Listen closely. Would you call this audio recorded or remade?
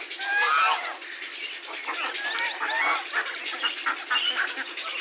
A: recorded